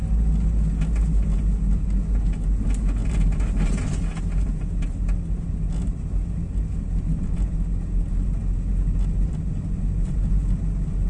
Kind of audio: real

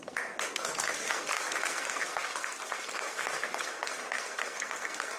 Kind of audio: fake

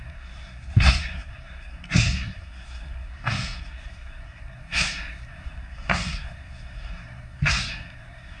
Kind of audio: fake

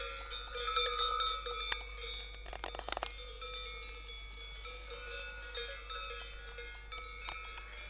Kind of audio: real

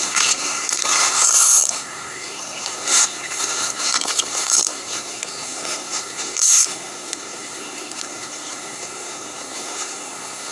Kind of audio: fake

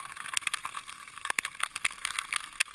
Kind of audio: fake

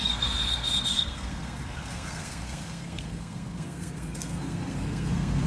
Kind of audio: fake